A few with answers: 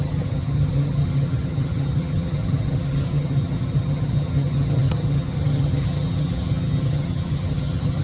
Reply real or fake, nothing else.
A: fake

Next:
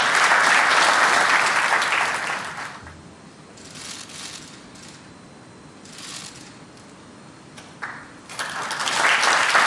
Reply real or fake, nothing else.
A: real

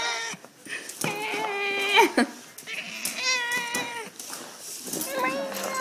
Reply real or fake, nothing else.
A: real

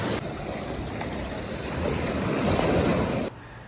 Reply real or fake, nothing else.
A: real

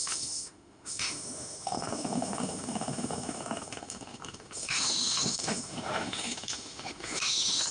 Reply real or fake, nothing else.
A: fake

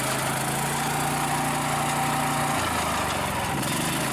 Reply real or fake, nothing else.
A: real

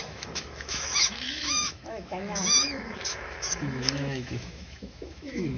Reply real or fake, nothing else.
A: fake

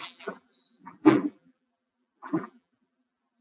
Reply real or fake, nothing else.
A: fake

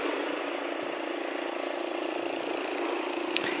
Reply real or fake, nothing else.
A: real